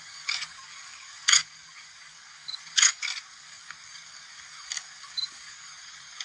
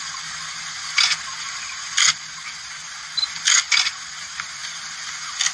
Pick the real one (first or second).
second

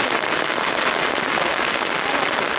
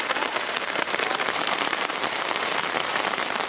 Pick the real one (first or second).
first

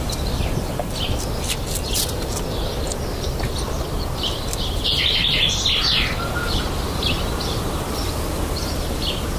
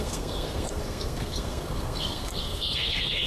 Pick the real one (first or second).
first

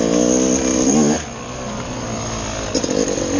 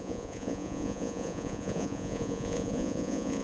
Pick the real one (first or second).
first